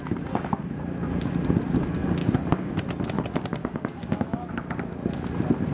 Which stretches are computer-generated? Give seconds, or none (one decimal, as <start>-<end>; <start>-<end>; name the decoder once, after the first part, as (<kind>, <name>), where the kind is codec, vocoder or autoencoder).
2.2-2.7 (codec, DAC); 3.6-4.5